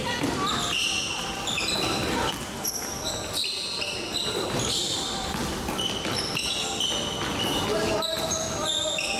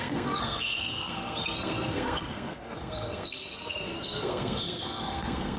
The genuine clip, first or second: first